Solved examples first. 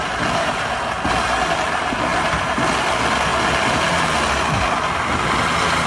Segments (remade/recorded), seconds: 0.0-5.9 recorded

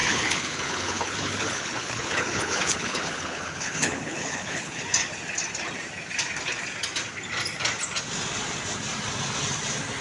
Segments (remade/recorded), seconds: 0.0-4.8 remade; 4.8-10.0 recorded

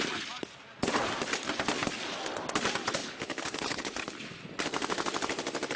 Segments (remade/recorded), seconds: 0.0-3.0 recorded; 3.0-3.9 remade; 3.9-5.8 recorded